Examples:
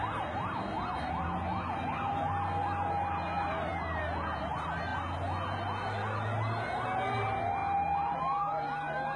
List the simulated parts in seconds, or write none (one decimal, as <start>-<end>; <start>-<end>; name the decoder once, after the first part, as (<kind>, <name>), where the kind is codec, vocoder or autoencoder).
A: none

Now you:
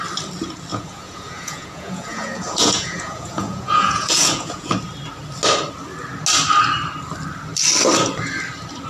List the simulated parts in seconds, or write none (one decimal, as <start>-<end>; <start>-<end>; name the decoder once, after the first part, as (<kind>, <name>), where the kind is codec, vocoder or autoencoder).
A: 0.7-4.7 (vocoder, Vocos)

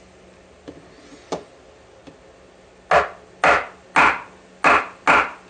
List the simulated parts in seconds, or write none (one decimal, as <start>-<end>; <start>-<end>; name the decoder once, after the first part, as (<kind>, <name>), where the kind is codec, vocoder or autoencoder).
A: none

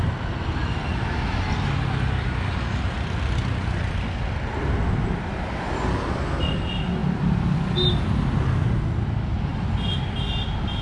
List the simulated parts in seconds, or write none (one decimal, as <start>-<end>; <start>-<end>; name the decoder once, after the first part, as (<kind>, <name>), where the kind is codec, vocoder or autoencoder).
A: none

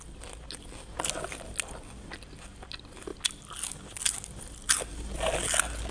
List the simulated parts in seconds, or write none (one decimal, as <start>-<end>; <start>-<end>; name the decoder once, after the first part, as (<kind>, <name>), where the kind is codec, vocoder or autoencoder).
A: none

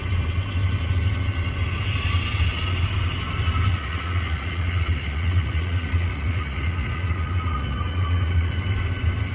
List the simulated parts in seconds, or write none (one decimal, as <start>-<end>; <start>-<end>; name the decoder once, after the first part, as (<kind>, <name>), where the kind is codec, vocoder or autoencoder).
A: 3.7-8.5 (vocoder, Vocos)